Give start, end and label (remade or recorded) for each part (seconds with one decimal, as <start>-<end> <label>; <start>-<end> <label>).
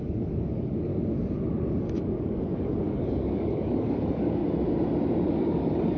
0.0-0.9 remade; 0.9-1.8 recorded; 1.8-4.4 remade; 4.4-5.3 recorded; 5.3-6.0 remade